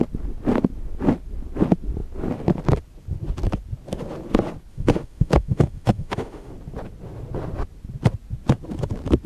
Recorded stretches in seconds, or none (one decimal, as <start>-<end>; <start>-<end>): 0.0-4.7; 6.5-9.3